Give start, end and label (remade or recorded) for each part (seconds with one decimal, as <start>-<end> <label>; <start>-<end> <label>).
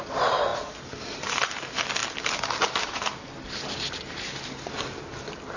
0.0-5.6 recorded